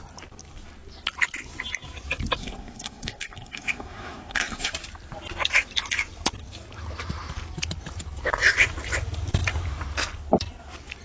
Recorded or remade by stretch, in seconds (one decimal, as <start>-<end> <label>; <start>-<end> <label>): 0.0-2.4 recorded; 2.4-4.7 remade; 4.7-11.0 recorded